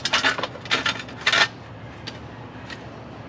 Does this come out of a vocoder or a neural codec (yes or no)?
no